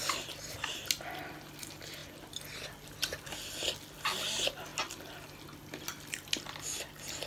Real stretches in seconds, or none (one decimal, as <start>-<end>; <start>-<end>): 0.0-7.3